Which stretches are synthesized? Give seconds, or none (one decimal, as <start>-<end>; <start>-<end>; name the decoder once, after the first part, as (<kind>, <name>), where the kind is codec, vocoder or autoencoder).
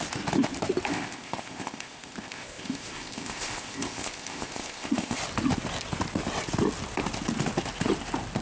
0.9-5.2 (codec, ZipCodec)